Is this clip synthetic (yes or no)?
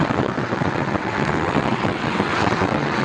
yes